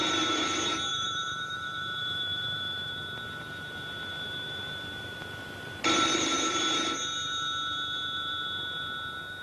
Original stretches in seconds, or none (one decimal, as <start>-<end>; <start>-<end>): 0.0-0.9; 2.9-9.4